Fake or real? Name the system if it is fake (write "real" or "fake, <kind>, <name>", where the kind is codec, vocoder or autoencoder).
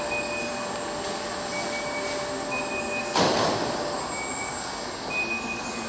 real